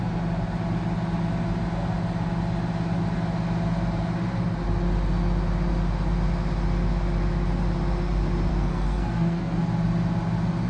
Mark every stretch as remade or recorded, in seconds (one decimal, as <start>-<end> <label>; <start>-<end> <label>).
0.0-8.5 recorded; 8.5-9.6 remade; 9.6-10.7 recorded